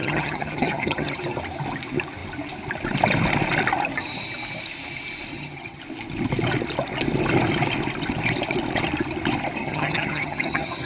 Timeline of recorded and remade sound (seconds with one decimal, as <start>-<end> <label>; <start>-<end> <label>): 0.0-1.2 remade; 1.2-5.3 recorded; 5.3-5.8 remade; 5.8-9.6 recorded; 9.6-10.9 remade